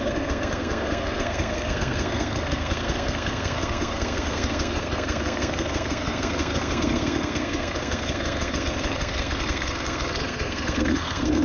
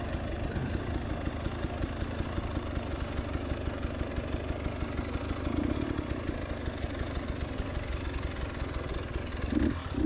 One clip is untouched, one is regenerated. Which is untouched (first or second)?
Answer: second